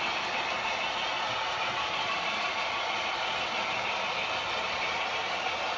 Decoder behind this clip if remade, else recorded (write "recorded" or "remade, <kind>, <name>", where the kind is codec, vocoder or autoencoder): recorded